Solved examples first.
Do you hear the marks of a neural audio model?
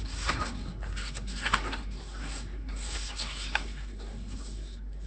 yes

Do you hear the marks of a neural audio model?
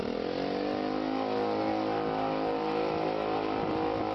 no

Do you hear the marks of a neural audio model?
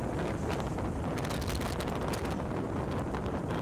no